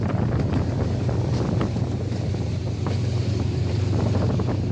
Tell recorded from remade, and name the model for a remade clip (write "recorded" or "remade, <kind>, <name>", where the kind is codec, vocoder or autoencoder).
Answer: remade, vocoder, BigVGAN v2